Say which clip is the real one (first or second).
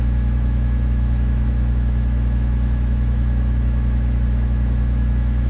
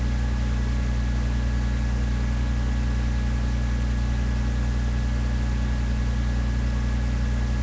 second